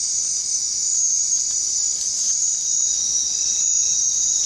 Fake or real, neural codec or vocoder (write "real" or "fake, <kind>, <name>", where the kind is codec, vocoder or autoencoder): real